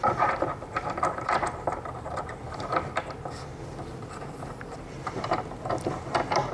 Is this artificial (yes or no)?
yes